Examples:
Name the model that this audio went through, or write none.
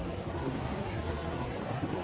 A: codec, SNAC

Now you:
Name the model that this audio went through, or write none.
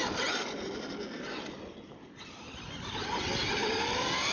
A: none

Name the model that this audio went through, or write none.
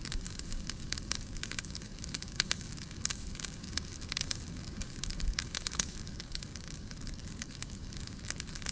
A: codec, DAC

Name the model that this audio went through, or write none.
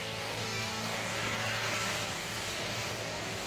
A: codec, DAC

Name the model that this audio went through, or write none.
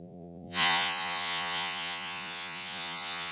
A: vocoder, Vocos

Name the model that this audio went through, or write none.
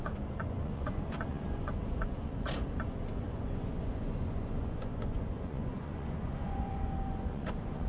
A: vocoder, Vocos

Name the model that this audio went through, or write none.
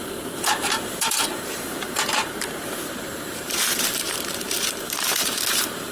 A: vocoder, BigVGAN v2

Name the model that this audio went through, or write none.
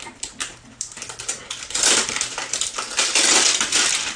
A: none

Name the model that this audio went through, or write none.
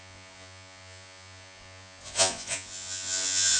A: vocoder, Vocos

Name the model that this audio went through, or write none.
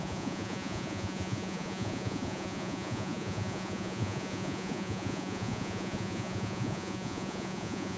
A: vocoder, Vocos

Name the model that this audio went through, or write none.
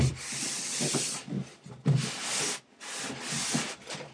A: vocoder, BigVGAN v2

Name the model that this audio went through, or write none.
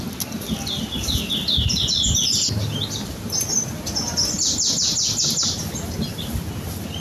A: none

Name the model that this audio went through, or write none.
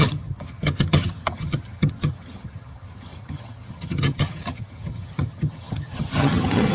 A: vocoder, HiFi-GAN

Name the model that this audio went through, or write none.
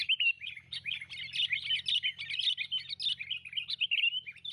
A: none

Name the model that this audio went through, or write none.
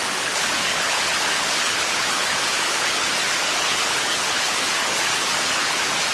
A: codec, HILCodec